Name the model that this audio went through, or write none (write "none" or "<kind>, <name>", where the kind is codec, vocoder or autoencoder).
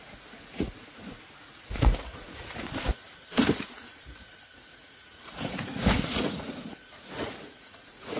vocoder, Vocos